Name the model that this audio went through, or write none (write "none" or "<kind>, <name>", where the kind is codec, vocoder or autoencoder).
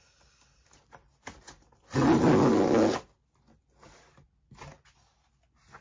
none